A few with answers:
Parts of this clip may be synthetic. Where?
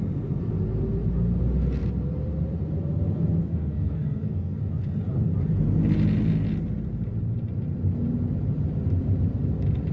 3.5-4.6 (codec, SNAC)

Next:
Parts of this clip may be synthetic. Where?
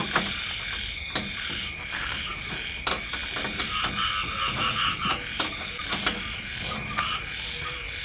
none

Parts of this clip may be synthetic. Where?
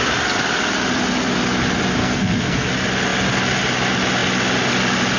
2.0-2.7 (codec, SNAC)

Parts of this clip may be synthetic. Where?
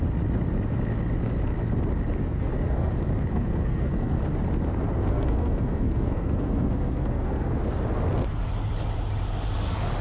2.2-2.9 (codec, SNAC); 3.3-4.2; 5.1-7.5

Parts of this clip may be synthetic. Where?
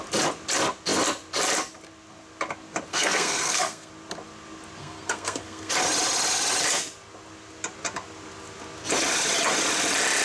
2.9-3.9 (codec, SNAC); 4.8-5.7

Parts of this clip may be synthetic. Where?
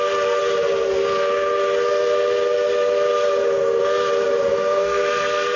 4.5-5.6 (codec, SNAC)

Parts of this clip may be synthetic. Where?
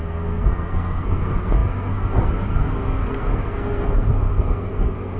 0.0-5.2 (codec, SNAC)